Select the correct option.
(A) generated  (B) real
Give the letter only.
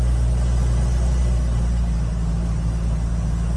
B